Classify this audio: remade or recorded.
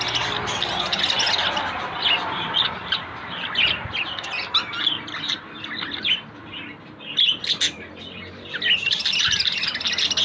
recorded